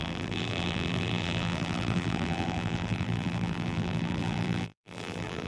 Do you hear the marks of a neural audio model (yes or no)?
yes